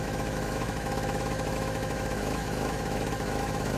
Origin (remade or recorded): remade